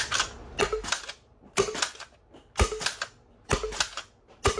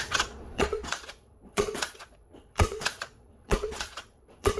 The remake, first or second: second